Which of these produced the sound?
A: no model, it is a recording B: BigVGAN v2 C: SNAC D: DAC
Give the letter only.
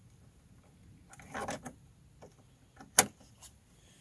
A